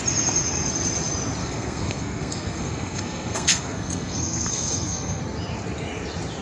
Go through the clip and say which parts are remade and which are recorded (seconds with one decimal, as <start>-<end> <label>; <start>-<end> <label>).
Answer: 0.0-1.4 recorded; 1.4-5.2 remade; 5.2-6.4 recorded